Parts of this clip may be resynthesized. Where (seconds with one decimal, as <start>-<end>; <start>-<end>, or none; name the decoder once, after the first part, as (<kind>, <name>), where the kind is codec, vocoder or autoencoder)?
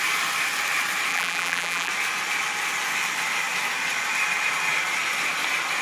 1.1-1.9 (vocoder, BigVGAN v2)